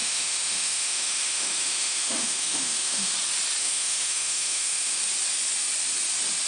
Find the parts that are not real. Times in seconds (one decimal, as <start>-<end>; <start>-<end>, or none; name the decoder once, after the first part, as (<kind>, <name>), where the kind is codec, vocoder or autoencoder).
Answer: 0.0-3.1 (autoencoder, DAC-VAE); 3.6-5.0